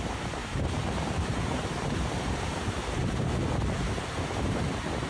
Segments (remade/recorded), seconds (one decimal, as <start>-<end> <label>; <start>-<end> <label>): 0.0-5.1 remade